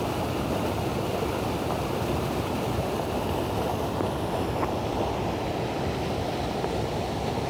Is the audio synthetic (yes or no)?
no